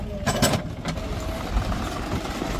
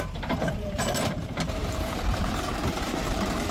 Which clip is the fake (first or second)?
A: second